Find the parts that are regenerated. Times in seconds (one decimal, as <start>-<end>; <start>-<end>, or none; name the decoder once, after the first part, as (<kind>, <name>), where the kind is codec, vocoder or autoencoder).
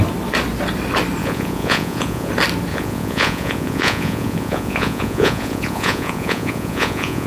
1.2-2.3 (vocoder, Vocos); 2.7-7.3